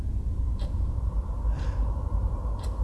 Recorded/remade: recorded